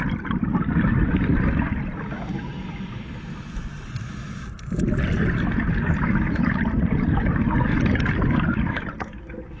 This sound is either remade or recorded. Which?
remade